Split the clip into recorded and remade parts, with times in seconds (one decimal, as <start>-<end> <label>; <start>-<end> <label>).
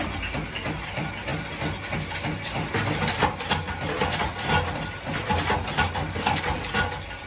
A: 0.0-7.3 recorded